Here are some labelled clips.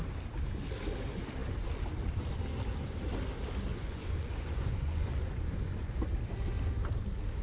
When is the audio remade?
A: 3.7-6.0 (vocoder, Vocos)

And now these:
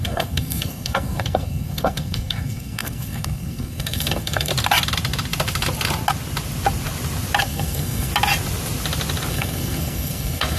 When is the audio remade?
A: 0.0-4.5 (codec, SNAC); 7.4-8.1; 9.3-10.6

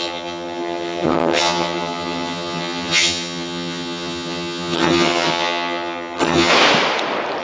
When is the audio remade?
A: 0.0-6.5 (vocoder, HiFi-GAN)

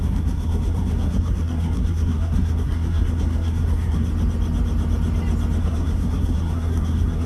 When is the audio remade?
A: 0.0-4.1 (codec, SNAC); 5.6-7.3

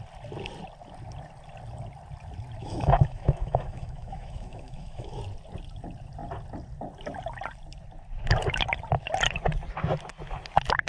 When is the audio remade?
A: 2.6-5.2 (autoencoder, DAC-VAE)

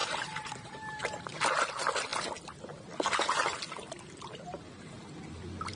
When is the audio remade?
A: 0.0-1.2 (vocoder, BigVGAN v2)